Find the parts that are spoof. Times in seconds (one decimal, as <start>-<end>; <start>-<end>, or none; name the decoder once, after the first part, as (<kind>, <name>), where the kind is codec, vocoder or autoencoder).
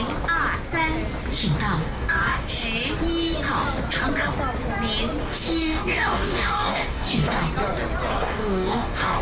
1.8-2.5 (codec, DAC); 5.2-7.4; 8.1-9.2